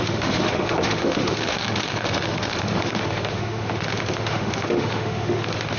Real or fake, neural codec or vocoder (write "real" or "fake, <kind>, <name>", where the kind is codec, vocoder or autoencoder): fake, autoencoder, DAC-VAE